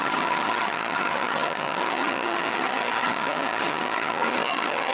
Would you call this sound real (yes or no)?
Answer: no